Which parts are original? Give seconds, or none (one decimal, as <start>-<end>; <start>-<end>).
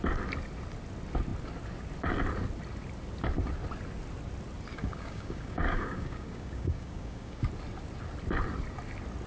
0.0-4.7; 7.5-9.3